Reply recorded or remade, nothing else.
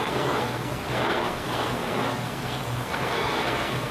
remade